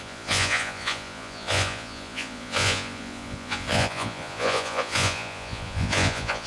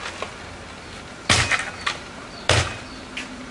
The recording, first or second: second